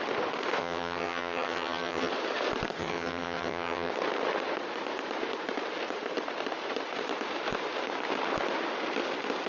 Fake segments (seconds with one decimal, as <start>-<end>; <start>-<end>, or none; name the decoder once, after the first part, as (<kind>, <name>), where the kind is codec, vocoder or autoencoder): 0.6-2.1 (vocoder, HiFi-GAN); 2.8-3.9